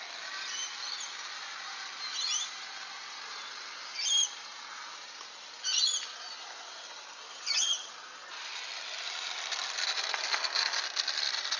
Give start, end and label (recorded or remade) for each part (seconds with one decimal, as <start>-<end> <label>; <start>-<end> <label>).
0.0-7.3 recorded; 7.3-7.9 remade; 7.9-11.6 recorded